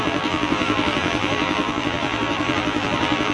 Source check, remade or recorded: remade